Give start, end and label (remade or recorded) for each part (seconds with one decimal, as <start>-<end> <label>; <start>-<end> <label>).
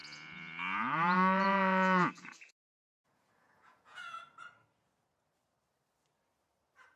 0.0-4.2 remade; 4.2-7.0 recorded